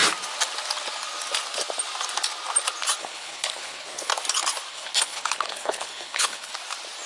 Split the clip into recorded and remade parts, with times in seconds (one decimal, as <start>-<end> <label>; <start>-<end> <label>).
0.0-3.0 recorded; 3.0-4.1 remade; 4.1-4.7 recorded; 4.7-6.5 remade; 6.5-7.1 recorded